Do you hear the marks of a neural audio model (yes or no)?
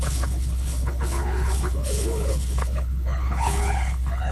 yes